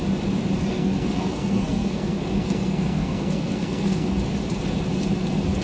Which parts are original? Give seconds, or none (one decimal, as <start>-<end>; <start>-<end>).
0.0-0.7; 4.1-5.6